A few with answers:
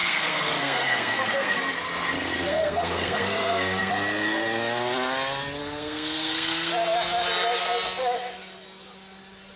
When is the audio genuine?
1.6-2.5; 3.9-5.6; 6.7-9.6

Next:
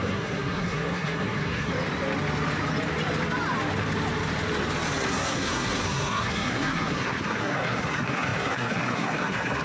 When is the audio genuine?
1.7-5.1

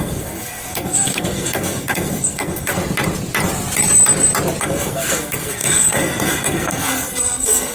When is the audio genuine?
2.8-4.6

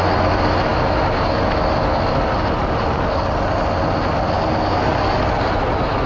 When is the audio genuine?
0.0-6.1

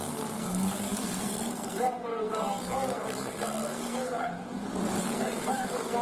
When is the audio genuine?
4.3-5.0